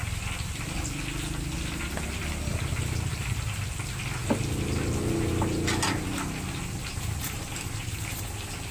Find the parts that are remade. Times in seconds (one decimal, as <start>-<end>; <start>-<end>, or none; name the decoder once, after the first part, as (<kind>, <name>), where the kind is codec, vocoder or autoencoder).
6.9-8.0 (vocoder, BigVGAN v2)